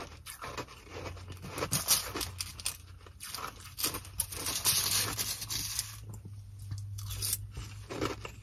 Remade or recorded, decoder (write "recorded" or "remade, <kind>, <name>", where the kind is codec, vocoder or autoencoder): recorded